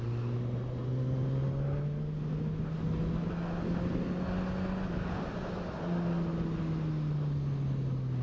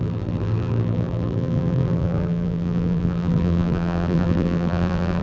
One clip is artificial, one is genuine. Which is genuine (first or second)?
first